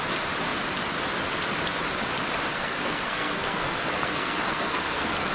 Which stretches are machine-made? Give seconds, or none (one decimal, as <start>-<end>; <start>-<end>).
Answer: 2.5-5.3